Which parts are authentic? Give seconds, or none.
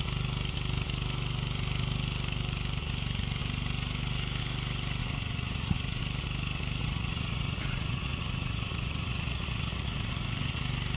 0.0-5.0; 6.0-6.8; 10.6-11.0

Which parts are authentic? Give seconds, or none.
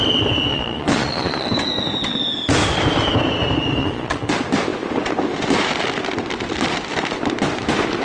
0.0-0.5; 1.5-3.8; 4.3-8.0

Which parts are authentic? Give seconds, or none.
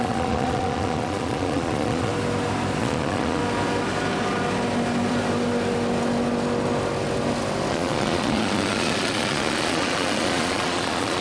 2.1-2.8; 3.4-7.7